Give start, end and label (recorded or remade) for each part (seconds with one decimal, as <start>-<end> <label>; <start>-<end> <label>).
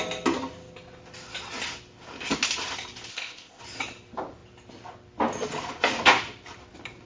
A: 0.0-3.1 recorded; 3.1-3.6 remade; 3.6-7.1 recorded